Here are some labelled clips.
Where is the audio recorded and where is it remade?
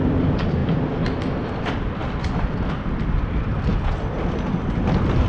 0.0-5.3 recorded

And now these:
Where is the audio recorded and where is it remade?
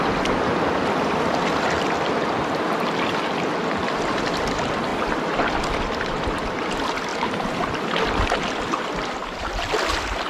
0.0-4.9 recorded; 4.9-5.6 remade; 5.6-7.1 recorded; 7.1-9.1 remade; 9.1-10.3 recorded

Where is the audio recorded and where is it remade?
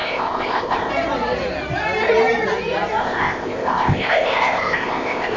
0.0-0.9 remade; 0.9-3.0 recorded; 3.0-5.4 remade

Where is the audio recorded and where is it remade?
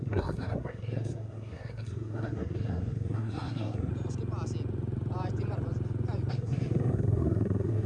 0.0-3.9 remade; 3.9-6.3 recorded; 6.3-7.9 remade